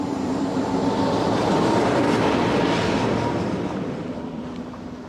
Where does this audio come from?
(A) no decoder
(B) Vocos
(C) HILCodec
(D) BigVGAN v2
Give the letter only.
D